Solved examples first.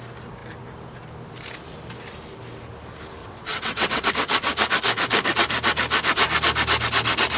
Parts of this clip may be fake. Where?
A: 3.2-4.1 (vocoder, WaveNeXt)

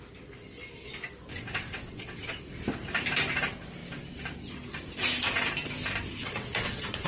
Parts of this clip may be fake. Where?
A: 1.3-2.4 (vocoder, WaveNeXt); 6.2-7.1

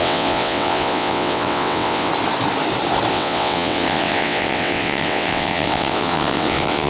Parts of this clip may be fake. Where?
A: 0.0-2.1 (vocoder, WaveNeXt); 3.1-6.9

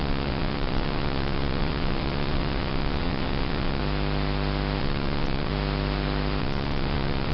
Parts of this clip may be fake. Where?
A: 0.0-3.8 (vocoder, WaveNeXt); 4.8-5.5; 6.4-7.3

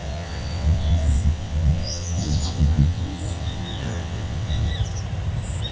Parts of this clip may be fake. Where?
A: 0.0-4.7 (vocoder, WaveNeXt)

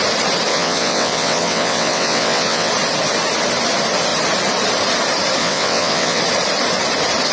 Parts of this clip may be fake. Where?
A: 0.5-2.7 (vocoder, WaveNeXt); 5.4-6.2

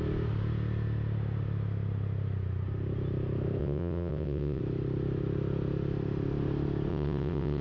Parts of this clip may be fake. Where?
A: 3.6-4.6 (vocoder, WaveNeXt); 6.9-7.6

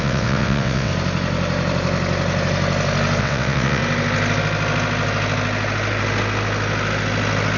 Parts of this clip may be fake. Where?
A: 0.0-0.9 (vocoder, WaveNeXt); 3.2-3.8